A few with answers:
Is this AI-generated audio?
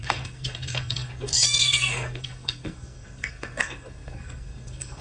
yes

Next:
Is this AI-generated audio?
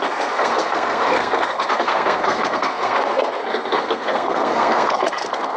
yes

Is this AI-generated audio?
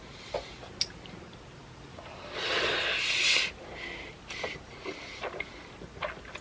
no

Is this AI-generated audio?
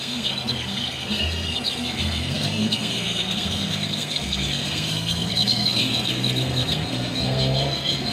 yes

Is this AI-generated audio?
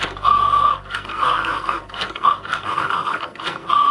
yes